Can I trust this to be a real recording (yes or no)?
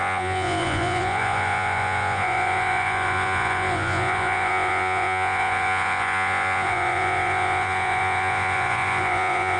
no